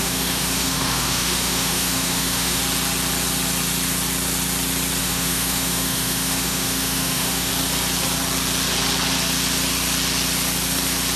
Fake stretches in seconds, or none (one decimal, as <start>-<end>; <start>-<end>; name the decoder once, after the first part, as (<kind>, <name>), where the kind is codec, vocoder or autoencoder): 0.0-2.6 (autoencoder, DAC-VAE); 5.0-7.5